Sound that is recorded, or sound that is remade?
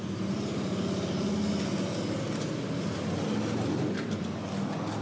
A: recorded